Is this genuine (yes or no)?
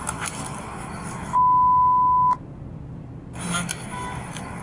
yes